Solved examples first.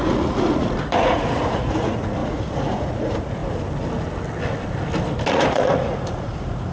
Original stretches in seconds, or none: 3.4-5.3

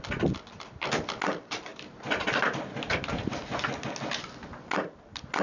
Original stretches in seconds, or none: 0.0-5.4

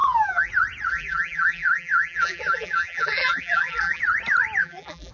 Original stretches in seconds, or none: 0.5-0.9; 4.0-4.6